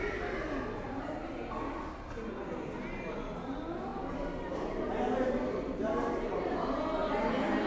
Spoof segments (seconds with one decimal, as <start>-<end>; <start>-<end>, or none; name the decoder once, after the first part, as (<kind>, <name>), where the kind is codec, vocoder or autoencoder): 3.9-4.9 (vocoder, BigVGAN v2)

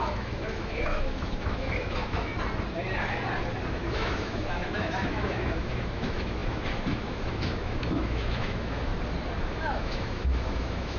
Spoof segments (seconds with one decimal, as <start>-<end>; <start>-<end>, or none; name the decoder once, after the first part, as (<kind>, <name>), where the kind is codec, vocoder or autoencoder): 0.0-2.3 (autoencoder, DAC-VAE); 3.7-8.9; 9.4-11.0

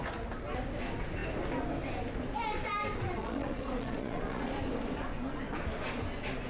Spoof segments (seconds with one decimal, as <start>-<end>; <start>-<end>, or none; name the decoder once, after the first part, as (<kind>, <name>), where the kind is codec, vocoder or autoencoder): 3.2-4.5 (vocoder, Vocos)